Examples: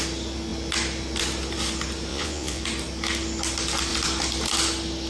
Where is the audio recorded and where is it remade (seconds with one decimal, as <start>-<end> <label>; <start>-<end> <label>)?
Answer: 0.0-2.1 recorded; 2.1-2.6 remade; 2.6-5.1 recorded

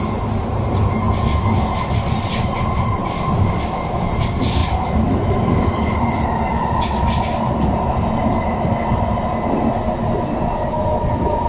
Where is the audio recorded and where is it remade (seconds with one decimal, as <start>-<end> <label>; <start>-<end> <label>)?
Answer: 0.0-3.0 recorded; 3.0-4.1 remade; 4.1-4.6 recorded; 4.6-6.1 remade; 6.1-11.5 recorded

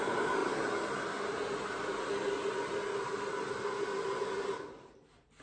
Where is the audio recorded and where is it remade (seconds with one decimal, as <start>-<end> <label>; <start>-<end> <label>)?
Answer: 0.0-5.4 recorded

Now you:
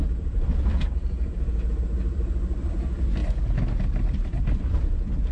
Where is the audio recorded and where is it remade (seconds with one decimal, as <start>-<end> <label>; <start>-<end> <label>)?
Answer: 0.0-1.8 remade; 1.8-3.2 recorded; 3.2-3.9 remade; 3.9-5.3 recorded

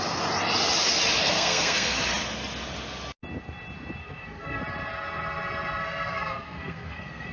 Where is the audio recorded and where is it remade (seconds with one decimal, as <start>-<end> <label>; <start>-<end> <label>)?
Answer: 0.0-1.2 recorded; 1.2-2.0 remade; 2.0-4.0 recorded; 4.0-4.6 remade; 4.6-5.8 recorded; 5.8-7.3 remade

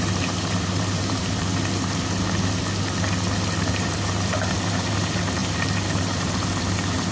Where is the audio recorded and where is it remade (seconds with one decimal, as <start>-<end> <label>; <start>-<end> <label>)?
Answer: 0.0-1.5 remade; 1.5-3.7 recorded; 3.7-7.1 remade